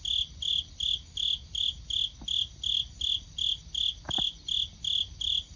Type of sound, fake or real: real